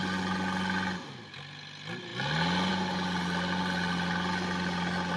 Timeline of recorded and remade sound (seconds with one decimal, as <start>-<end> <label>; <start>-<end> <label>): 0.0-5.2 recorded

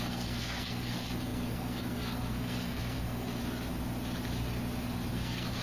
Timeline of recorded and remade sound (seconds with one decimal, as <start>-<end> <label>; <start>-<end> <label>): 0.0-3.4 remade; 3.4-5.1 recorded; 5.1-5.6 remade

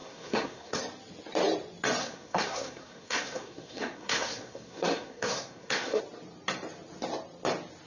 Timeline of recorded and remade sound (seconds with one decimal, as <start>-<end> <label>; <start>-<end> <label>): 0.0-0.8 remade; 0.8-2.0 recorded; 2.0-6.0 remade; 6.0-7.9 recorded

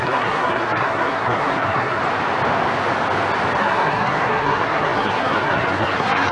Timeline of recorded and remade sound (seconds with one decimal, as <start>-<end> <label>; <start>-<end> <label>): 0.0-2.0 remade; 2.0-3.6 recorded; 3.6-6.3 remade

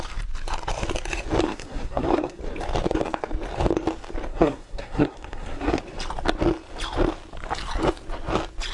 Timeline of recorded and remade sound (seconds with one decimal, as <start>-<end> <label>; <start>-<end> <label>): 0.0-1.4 recorded; 1.4-2.4 remade; 2.4-4.3 recorded; 4.3-5.8 remade; 5.8-8.7 recorded

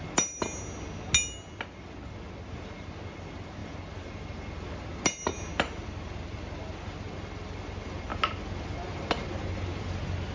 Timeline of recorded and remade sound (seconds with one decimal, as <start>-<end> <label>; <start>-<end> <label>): 0.0-10.3 recorded